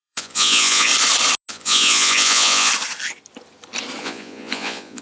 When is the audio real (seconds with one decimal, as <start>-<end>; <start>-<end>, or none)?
0.9-1.5; 2.7-4.0